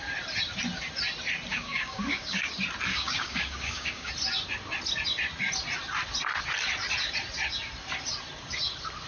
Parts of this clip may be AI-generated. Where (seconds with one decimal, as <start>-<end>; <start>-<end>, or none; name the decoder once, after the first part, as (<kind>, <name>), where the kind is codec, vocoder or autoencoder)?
1.5-2.5 (codec, DAC); 2.9-4.1